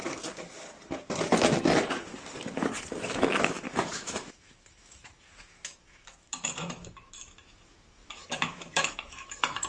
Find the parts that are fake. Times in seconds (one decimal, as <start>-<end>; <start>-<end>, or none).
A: 3.1-9.7